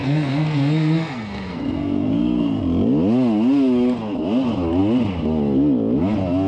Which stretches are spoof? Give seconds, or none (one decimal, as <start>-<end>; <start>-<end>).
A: 0.0-2.6